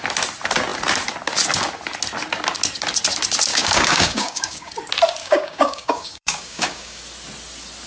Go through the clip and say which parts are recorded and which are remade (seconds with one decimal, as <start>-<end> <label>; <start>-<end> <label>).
0.0-3.5 recorded; 3.5-4.7 remade; 4.7-5.2 recorded; 5.2-7.0 remade; 7.0-7.9 recorded